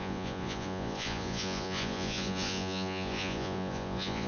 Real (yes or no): no